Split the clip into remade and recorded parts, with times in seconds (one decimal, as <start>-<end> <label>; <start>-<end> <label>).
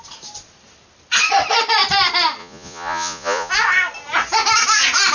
0.0-2.4 recorded; 2.4-3.5 remade; 3.5-5.1 recorded